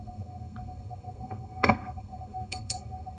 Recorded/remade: remade